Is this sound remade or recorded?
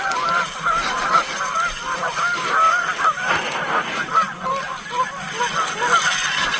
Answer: recorded